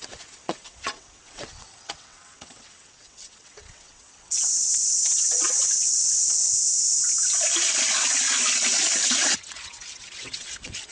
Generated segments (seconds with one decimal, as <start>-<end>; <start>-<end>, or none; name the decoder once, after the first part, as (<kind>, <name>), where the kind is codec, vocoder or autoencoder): 0.0-6.5 (vocoder, WaveNeXt); 9.1-10.9

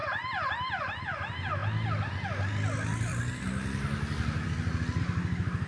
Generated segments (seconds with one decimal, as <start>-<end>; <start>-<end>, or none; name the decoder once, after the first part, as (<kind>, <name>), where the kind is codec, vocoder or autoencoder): none

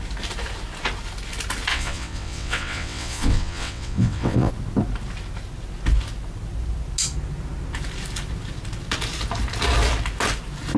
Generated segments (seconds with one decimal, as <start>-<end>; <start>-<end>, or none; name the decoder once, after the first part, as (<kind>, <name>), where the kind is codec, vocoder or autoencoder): 1.7-4.5 (vocoder, WaveNeXt)

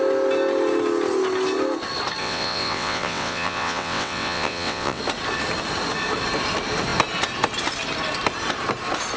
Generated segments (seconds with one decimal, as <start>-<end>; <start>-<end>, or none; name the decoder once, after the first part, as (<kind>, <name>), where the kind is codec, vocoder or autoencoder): 2.2-5.0 (vocoder, WaveNeXt)